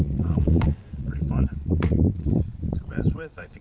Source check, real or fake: fake